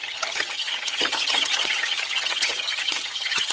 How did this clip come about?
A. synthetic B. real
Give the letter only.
A